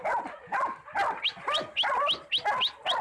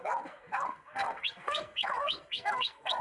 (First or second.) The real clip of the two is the first